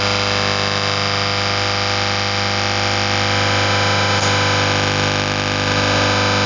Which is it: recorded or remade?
remade